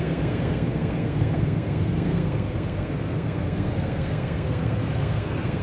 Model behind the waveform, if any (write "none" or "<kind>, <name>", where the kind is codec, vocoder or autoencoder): codec, SNAC